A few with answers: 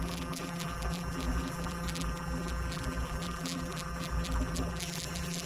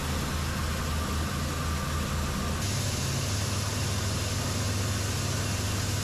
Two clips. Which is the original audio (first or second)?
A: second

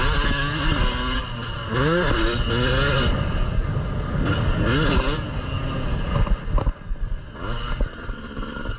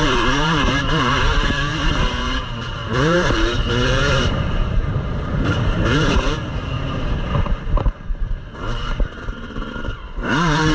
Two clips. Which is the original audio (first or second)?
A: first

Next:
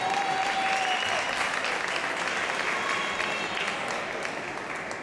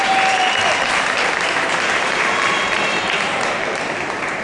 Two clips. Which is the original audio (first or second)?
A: first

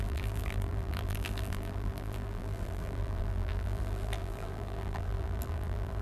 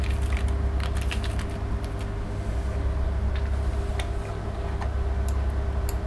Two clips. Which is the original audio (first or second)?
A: second